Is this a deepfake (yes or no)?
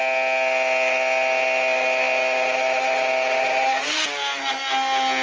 no